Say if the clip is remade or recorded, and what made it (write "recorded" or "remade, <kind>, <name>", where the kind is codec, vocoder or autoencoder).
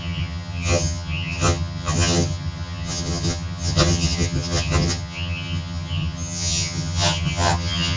remade, vocoder, HiFi-GAN